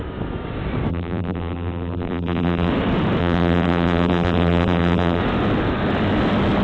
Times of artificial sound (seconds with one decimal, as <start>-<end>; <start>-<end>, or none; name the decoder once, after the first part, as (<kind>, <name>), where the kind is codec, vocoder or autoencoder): 0.9-2.7 (vocoder, BigVGAN v2); 3.2-5.2